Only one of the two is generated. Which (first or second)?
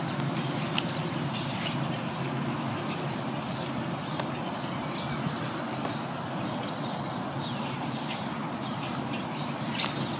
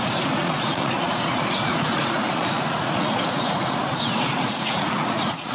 second